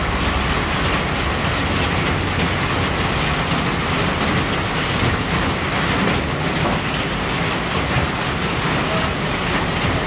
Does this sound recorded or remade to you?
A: recorded